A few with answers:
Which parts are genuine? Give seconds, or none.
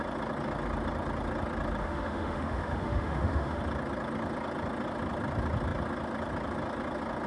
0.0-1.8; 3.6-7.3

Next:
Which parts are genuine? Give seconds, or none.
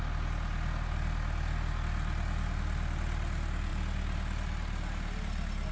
0.0-5.7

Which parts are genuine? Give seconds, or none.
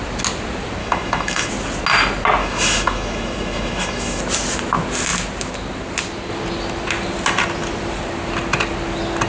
0.0-0.8; 1.5-2.4; 4.2-9.3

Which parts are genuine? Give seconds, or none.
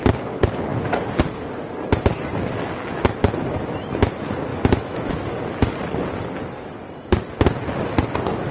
0.0-4.5; 5.1-8.5